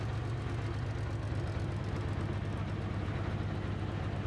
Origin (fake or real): real